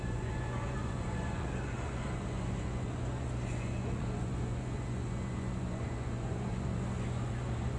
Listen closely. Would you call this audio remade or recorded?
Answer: remade